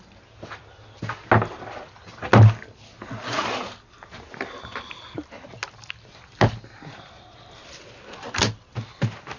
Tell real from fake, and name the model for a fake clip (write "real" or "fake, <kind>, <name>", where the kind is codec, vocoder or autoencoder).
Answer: real